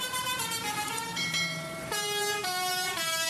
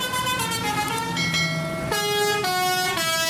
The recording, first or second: second